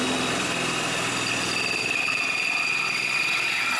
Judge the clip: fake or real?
real